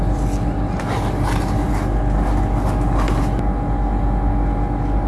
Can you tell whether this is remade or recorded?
recorded